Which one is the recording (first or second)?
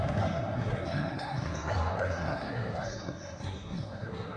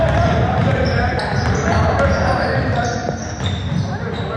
second